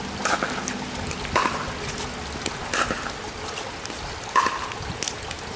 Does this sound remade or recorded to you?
recorded